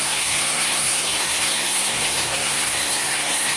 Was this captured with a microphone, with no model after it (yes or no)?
no